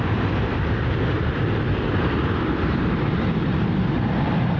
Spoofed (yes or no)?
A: yes